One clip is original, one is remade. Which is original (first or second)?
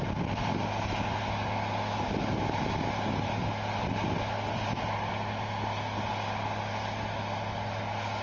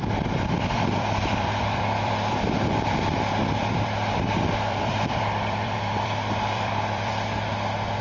first